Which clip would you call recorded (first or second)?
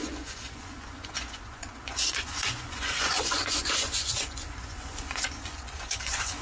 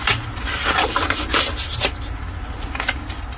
second